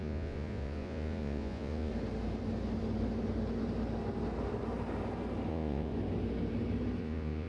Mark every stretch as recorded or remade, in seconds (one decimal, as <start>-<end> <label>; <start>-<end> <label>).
0.0-1.9 remade; 1.9-5.5 recorded; 5.5-5.9 remade; 5.9-7.0 recorded; 7.0-7.5 remade